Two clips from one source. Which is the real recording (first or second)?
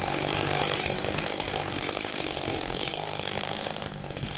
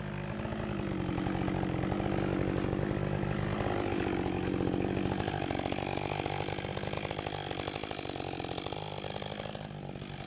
second